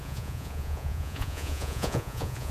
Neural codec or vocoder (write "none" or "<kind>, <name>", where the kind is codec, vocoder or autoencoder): vocoder, Vocos